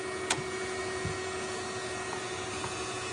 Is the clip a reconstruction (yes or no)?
yes